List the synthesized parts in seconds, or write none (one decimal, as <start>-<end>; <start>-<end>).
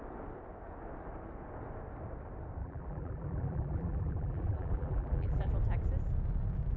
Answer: 2.6-5.5